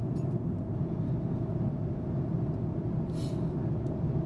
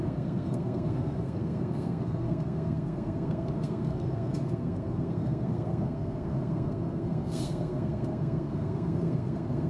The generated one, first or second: second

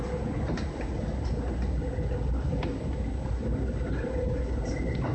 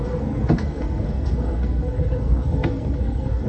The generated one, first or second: second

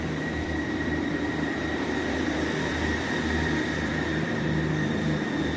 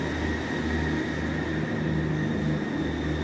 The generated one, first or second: first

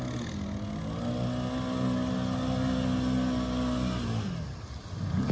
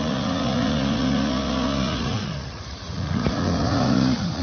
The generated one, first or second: second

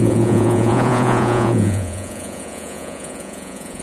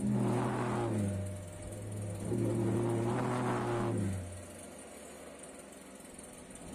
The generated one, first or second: first